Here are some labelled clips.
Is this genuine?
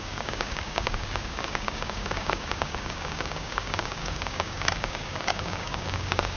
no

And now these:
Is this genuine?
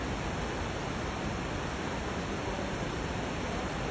yes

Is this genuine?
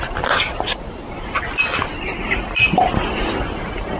yes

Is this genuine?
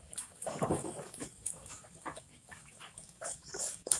no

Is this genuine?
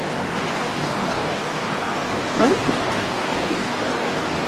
no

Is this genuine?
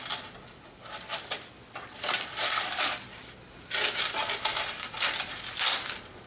yes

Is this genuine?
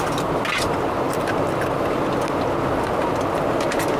yes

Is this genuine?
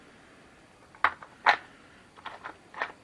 yes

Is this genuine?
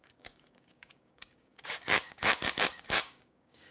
no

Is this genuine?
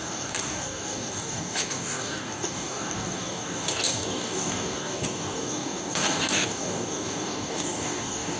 no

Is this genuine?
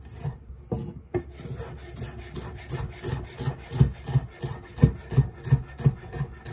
yes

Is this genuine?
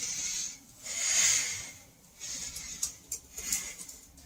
yes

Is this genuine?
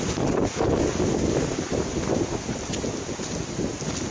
yes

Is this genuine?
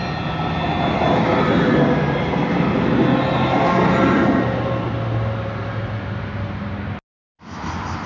yes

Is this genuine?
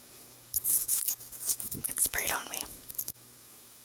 no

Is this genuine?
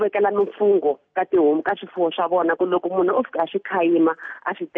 yes